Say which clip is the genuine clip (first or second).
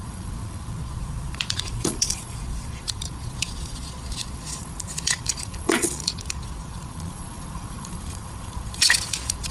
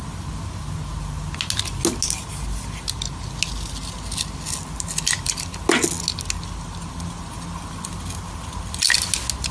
second